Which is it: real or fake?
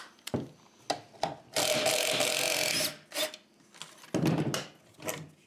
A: real